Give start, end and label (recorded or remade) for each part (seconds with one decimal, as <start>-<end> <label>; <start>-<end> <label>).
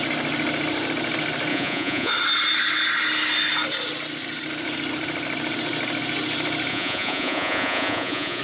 0.0-1.5 recorded; 1.5-2.1 remade; 2.1-6.7 recorded; 6.7-8.4 remade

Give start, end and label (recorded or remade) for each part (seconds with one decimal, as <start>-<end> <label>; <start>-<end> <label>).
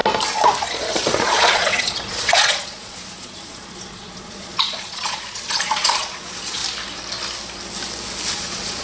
0.0-0.6 recorded; 0.6-6.6 remade; 6.6-8.3 recorded; 8.3-8.8 remade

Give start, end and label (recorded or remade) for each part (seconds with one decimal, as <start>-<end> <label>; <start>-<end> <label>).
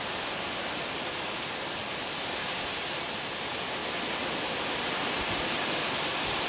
0.0-6.5 recorded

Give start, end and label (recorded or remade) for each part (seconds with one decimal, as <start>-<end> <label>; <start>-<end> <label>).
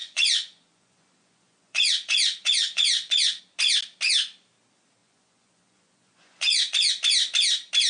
0.0-3.4 remade; 3.4-5.0 recorded; 5.0-6.9 remade; 6.9-7.9 recorded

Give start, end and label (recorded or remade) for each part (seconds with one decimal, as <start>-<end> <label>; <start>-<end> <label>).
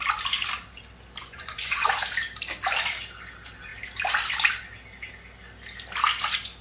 0.0-1.2 recorded; 1.2-1.9 remade; 1.9-6.6 recorded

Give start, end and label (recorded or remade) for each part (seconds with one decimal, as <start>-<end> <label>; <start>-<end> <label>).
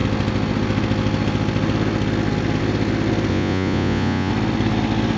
0.0-3.3 recorded; 3.3-4.3 remade; 4.3-5.2 recorded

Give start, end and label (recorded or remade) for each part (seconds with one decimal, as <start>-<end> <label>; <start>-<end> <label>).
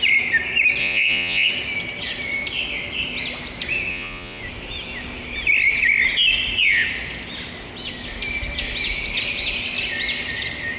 0.0-0.8 recorded; 0.8-1.5 remade; 1.5-3.9 recorded; 3.9-4.4 remade; 4.4-10.8 recorded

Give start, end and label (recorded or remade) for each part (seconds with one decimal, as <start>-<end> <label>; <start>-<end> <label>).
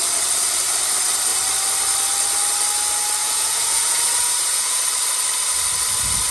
0.0-3.2 recorded; 3.2-4.8 remade; 4.8-6.3 recorded